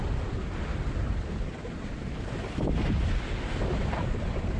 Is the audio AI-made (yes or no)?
no